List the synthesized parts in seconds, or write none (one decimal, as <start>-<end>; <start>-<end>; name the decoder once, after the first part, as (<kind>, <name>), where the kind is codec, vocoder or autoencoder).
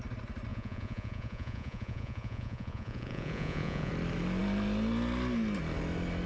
0.5-3.9 (vocoder, Vocos)